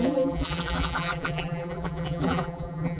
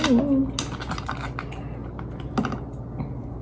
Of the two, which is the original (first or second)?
second